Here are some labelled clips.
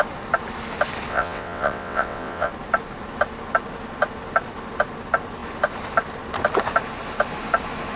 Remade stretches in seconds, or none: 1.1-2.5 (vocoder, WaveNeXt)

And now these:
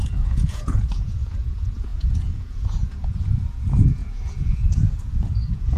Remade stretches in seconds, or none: 0.0-5.8 (vocoder, Vocos)

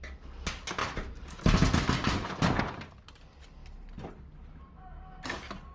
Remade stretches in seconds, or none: 0.8-2.9 (vocoder, BigVGAN v2); 3.6-4.1

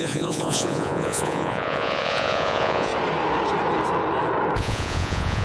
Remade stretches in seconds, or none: 0.0-2.9 (vocoder, Vocos); 4.6-5.4

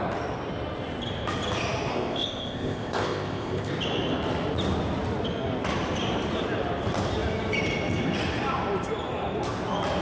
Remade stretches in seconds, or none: 1.9-3.7 (codec, ZipCodec)

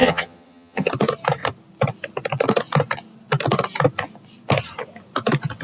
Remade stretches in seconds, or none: 0.0-0.9 (vocoder, HiFi-GAN)

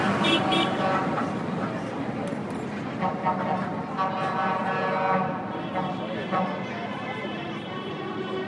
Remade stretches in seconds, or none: 6.8-7.9 (vocoder, BigVGAN v2)